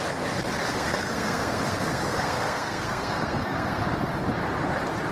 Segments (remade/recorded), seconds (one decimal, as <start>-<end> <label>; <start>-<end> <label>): 0.0-0.7 recorded; 0.7-3.8 remade; 3.8-5.1 recorded